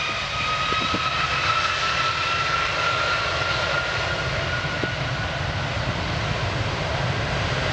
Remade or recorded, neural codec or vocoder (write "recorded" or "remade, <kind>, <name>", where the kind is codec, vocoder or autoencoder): recorded